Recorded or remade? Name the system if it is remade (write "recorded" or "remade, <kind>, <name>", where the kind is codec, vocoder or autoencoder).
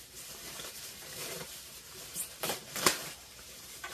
remade, vocoder, BigVGAN v2